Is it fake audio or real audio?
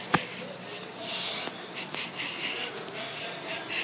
real